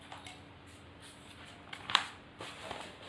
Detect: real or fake real